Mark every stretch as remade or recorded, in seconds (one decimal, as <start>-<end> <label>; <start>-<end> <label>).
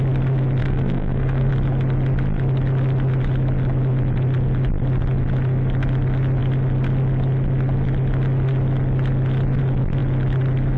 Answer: 0.0-0.6 recorded; 0.6-1.5 remade; 1.5-10.8 recorded